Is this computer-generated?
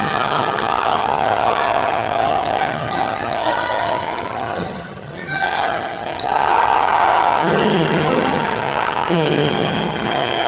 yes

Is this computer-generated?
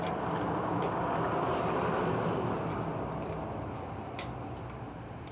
no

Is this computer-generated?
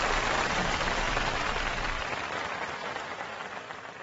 no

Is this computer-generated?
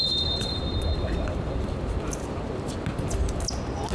no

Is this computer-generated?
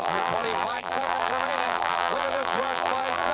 yes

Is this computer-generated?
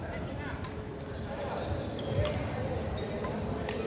no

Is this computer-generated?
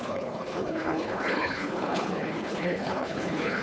yes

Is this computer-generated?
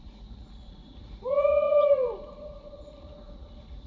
yes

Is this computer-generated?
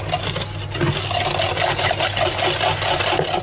no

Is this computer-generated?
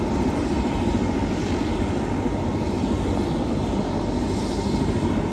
no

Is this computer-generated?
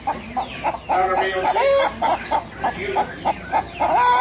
no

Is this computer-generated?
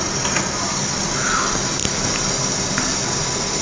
no